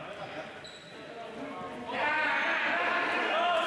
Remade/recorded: recorded